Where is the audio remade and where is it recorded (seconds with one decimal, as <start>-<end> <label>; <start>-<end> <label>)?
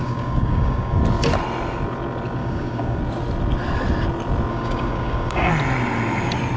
0.0-1.0 remade; 1.0-2.4 recorded; 2.4-3.0 remade; 3.0-4.5 recorded; 4.5-5.5 remade; 5.5-6.6 recorded